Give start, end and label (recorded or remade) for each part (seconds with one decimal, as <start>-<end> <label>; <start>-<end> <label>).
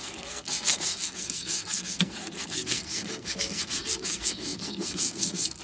0.0-5.6 remade